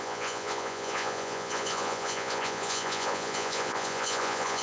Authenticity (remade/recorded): remade